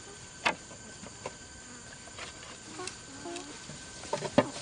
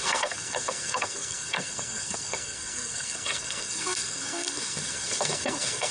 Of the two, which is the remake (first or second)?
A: second